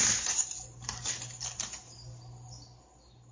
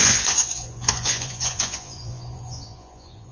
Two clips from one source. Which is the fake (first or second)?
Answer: second